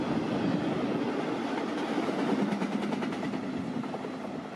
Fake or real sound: real